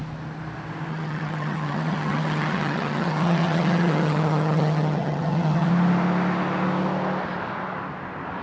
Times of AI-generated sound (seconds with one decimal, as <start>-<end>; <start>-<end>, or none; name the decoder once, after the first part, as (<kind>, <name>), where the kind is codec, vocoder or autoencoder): 0.9-5.7 (vocoder, HiFi-GAN)